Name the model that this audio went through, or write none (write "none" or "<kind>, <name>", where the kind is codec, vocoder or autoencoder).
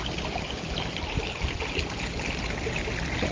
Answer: none